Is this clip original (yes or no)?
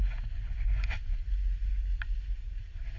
yes